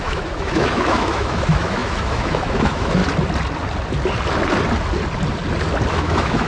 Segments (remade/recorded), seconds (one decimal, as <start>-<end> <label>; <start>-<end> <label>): 0.0-3.0 remade; 3.0-5.9 recorded; 5.9-6.5 remade